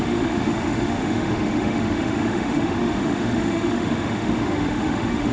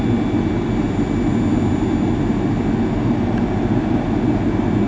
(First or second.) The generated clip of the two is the first